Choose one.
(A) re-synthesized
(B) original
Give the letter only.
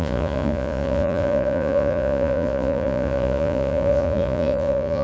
A